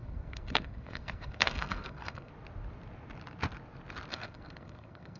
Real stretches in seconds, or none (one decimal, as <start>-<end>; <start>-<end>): 2.3-4.1